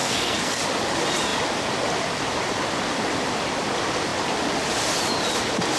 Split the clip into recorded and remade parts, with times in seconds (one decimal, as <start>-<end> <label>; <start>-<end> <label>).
0.0-0.6 remade; 0.6-5.8 recorded